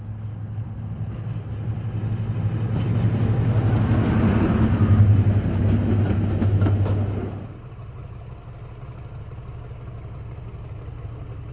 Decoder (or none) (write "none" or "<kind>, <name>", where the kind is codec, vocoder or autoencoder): none